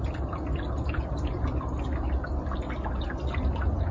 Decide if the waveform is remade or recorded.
recorded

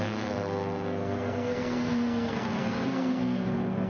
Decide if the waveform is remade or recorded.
remade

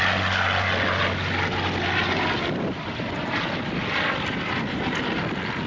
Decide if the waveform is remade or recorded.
recorded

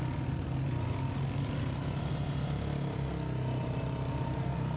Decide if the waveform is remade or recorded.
recorded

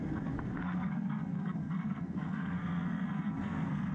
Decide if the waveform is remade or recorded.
remade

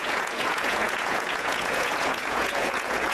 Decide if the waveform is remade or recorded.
remade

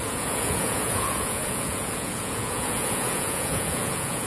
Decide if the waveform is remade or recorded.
remade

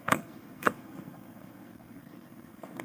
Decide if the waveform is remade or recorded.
remade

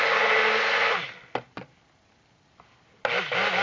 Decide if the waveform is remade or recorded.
recorded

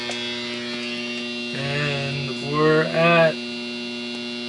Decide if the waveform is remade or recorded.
recorded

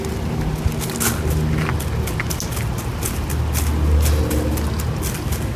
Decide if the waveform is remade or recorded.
recorded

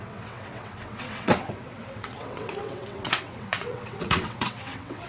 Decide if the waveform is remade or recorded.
remade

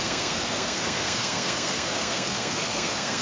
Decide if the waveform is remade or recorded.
remade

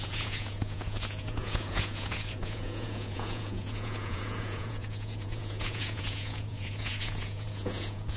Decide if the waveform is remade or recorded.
remade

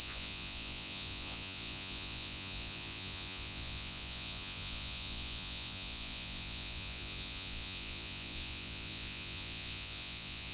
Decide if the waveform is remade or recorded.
remade